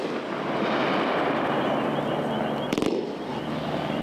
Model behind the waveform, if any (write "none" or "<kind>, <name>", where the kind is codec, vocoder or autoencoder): none